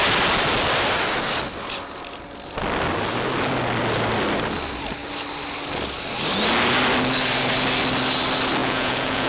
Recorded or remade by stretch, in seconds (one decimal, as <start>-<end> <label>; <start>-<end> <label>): 0.0-8.6 recorded; 8.6-9.3 remade